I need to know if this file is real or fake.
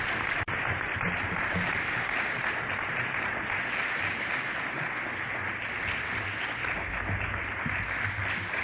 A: real